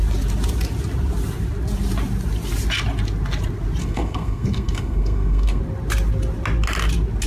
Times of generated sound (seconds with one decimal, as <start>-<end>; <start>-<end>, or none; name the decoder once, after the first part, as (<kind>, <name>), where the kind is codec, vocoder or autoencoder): 3.8-5.6 (codec, SNAC)